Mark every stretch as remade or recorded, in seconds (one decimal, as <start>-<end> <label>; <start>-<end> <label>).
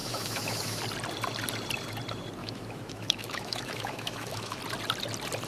0.0-0.8 remade; 0.8-2.4 recorded; 2.4-4.6 remade; 4.6-5.5 recorded